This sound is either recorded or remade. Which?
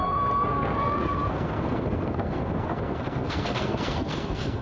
remade